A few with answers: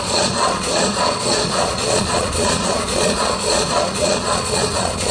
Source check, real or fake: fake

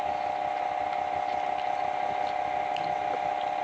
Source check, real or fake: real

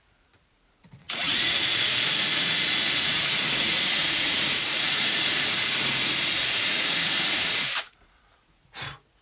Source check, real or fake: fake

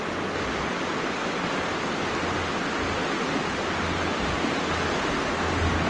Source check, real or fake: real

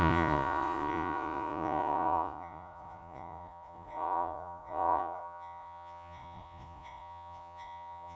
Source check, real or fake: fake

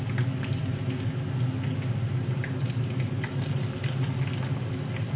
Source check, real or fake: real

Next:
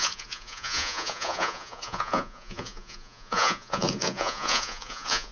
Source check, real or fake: fake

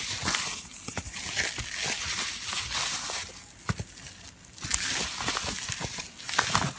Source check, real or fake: real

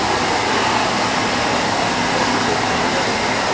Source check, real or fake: real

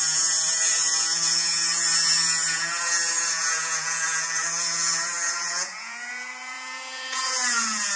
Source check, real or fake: fake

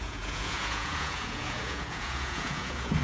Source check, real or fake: fake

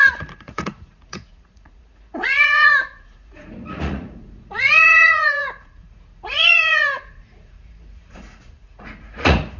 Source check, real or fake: fake